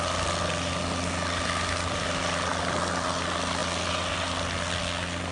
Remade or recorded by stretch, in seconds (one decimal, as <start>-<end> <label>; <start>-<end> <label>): 0.0-5.3 recorded

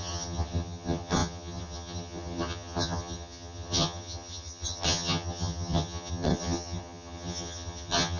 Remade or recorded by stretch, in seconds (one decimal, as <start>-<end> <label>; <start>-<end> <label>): 0.0-8.2 remade

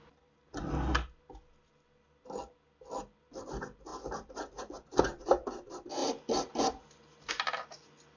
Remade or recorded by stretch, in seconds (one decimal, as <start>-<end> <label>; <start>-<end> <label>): 0.0-3.9 recorded; 3.9-4.6 remade; 4.6-6.0 recorded; 6.0-7.3 remade; 7.3-8.2 recorded

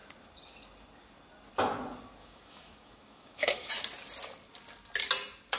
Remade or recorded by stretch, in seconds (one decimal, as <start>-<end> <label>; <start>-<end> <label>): 0.0-2.2 recorded; 2.2-3.7 remade; 3.7-5.6 recorded